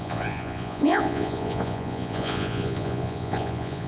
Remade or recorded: remade